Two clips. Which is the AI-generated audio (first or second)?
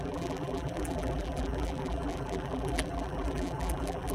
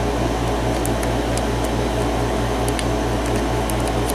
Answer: first